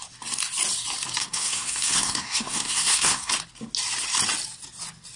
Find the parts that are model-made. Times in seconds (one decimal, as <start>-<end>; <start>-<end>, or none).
1.2-3.3